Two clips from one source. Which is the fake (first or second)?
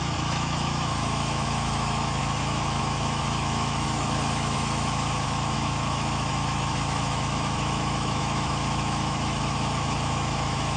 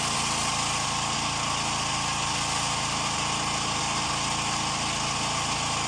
first